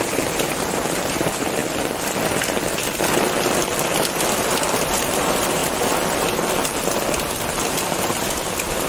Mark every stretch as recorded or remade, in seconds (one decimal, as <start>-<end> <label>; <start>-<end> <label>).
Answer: 0.0-1.6 remade; 1.6-4.3 recorded; 4.3-5.6 remade; 5.6-6.5 recorded; 6.5-8.9 remade